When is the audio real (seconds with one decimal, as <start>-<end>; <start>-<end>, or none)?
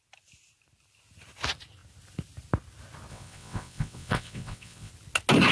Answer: 0.0-3.1; 4.9-5.5